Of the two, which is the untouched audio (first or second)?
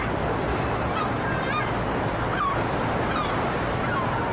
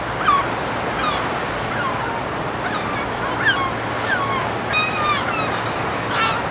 second